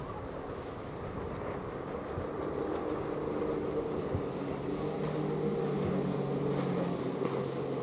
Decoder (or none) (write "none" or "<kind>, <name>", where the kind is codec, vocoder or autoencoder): none